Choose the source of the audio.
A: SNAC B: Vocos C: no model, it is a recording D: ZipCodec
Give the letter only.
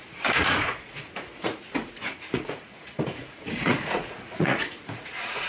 B